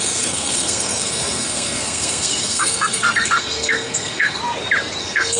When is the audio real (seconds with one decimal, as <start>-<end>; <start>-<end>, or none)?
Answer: 4.4-5.0